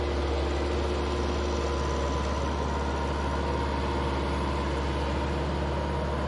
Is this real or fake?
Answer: real